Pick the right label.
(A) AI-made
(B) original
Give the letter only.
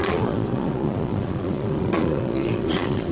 A